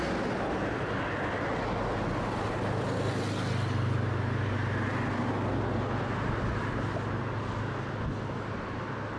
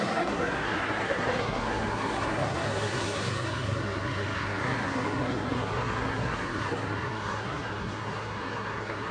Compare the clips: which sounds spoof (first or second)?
second